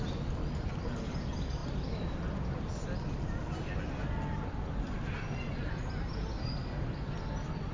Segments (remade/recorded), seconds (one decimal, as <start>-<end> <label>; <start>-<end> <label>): 0.0-7.7 recorded